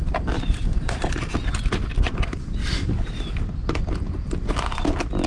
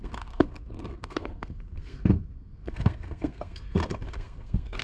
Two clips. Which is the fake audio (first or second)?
second